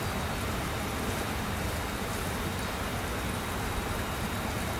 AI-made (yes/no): no